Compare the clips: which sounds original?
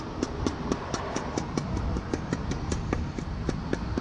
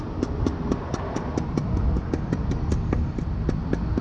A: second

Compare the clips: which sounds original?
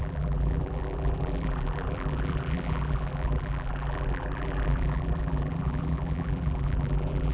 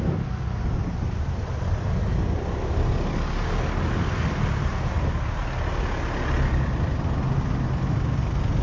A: second